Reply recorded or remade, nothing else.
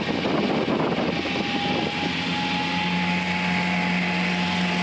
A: recorded